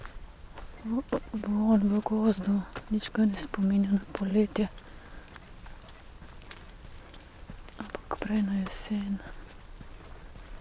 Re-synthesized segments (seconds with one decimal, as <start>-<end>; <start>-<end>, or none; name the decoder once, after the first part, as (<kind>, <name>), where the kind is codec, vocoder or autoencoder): none